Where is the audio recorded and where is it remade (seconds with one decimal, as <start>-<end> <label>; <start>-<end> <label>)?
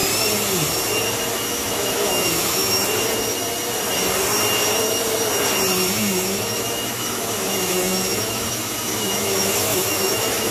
0.0-1.3 recorded; 1.3-2.8 remade; 2.8-5.9 recorded; 5.9-10.5 remade